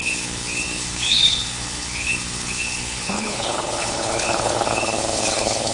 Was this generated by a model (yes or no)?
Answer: yes